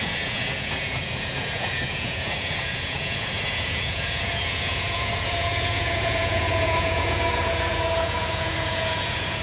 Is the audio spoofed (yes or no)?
yes